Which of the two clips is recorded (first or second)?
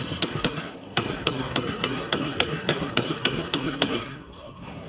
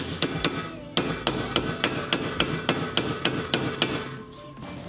second